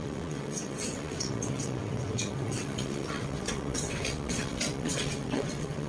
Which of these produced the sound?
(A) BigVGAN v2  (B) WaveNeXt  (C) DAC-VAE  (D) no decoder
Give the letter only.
B